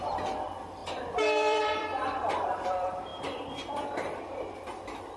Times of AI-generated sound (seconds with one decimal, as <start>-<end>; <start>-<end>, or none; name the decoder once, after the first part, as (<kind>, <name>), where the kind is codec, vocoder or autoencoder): 0.0-5.2 (vocoder, BigVGAN v2)